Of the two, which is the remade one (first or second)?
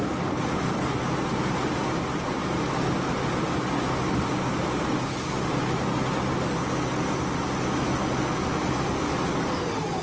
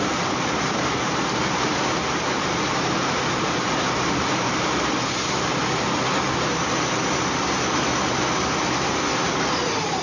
second